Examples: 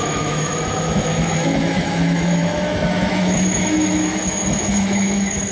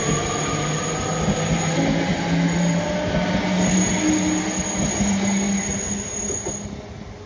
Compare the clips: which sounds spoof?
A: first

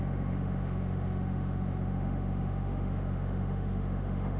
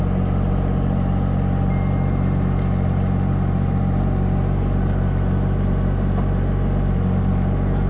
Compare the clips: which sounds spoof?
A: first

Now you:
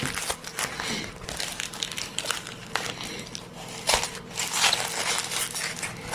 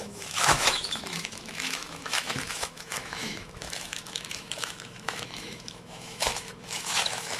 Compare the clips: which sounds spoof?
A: second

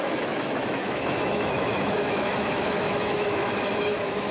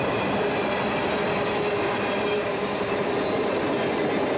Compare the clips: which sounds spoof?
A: first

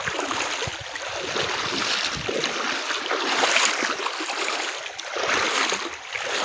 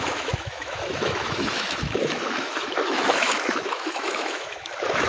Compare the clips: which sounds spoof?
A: second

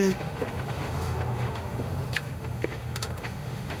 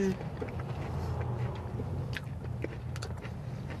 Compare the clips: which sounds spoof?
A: first